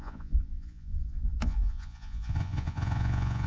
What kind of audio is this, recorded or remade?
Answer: remade